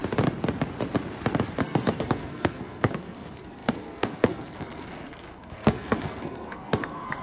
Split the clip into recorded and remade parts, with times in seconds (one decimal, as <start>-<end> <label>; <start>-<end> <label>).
0.0-1.6 recorded; 1.6-7.2 remade